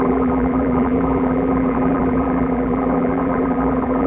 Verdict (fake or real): fake